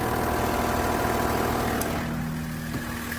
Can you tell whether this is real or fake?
real